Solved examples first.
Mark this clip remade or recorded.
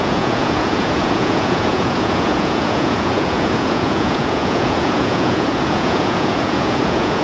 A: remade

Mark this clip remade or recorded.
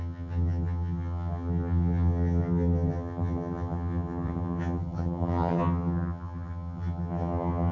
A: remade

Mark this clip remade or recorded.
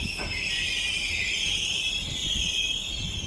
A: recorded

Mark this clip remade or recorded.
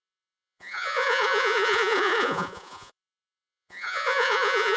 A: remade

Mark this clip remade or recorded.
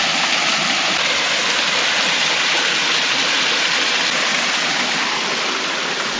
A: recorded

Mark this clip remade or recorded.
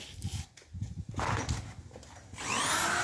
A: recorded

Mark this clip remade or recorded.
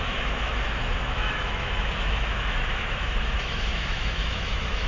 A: remade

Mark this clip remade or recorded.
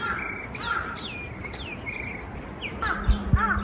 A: recorded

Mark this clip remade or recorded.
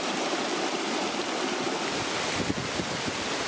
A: recorded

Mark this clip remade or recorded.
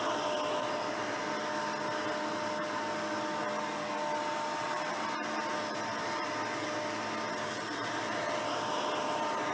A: recorded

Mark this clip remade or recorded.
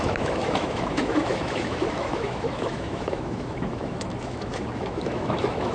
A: remade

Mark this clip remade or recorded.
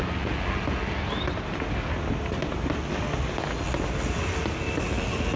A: recorded